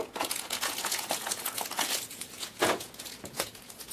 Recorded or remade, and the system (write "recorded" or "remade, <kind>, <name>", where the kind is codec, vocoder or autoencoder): remade, vocoder, Vocos